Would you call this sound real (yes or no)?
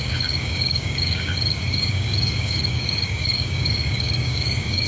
no